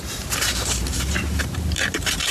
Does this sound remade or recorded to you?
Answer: remade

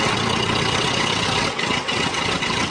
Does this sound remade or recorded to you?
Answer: remade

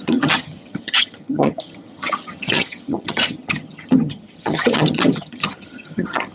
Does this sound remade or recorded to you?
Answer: remade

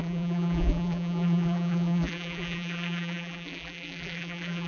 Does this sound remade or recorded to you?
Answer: remade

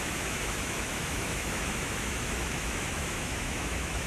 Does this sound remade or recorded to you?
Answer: remade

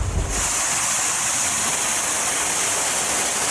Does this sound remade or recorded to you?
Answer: recorded